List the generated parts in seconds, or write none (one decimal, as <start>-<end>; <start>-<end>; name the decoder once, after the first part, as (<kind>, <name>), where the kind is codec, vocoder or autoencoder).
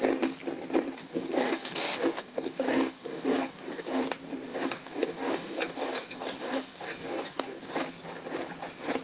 1.0-4.0 (codec, DAC); 4.5-7.7